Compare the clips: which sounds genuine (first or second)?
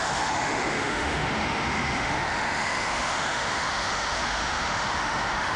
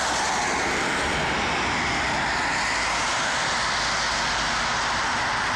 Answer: second